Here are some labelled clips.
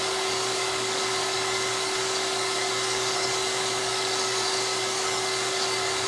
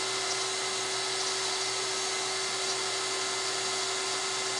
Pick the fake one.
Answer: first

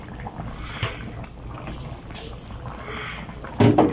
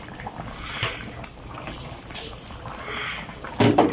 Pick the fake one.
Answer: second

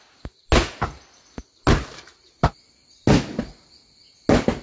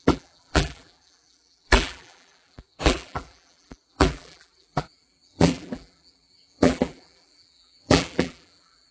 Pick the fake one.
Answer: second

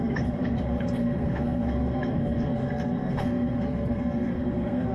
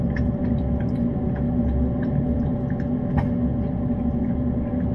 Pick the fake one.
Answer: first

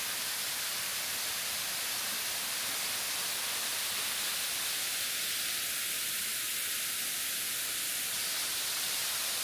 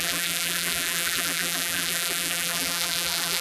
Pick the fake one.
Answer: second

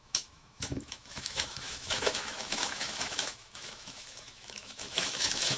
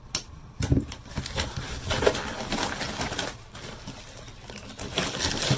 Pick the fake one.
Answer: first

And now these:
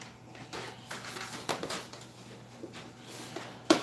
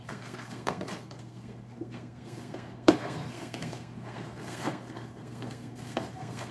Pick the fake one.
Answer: second